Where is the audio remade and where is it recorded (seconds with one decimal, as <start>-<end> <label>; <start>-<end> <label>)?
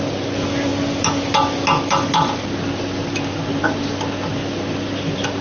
0.0-5.4 recorded